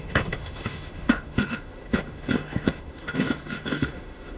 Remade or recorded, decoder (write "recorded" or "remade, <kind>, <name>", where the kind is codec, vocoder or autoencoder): remade, autoencoder, DAC-VAE